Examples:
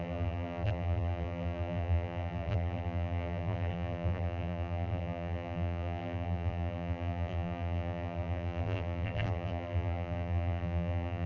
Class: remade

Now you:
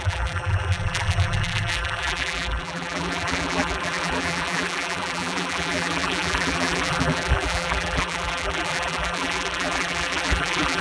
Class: remade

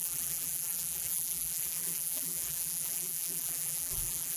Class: remade